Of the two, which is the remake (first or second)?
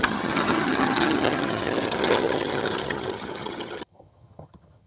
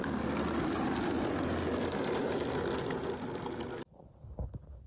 first